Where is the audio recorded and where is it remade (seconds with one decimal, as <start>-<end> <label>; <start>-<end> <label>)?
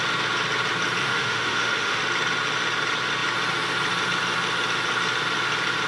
0.0-1.0 recorded; 1.0-2.0 remade; 2.0-5.9 recorded